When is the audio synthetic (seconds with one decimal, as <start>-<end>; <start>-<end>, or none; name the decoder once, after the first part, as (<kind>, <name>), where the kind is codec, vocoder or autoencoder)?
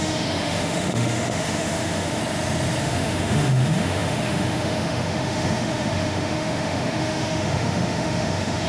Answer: 0.0-2.2 (autoencoder, DAC-VAE); 2.8-8.7